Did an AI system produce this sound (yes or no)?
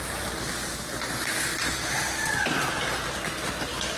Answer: no